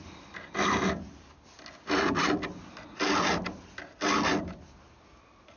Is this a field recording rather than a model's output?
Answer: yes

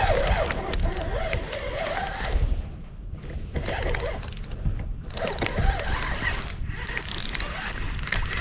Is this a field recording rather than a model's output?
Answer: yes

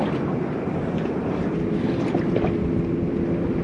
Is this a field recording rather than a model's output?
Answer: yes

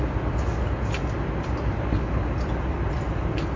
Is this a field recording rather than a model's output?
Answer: yes